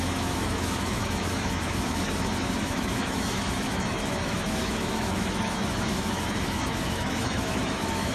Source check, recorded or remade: remade